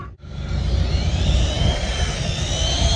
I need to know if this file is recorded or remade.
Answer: recorded